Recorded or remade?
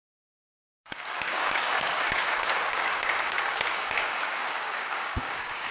remade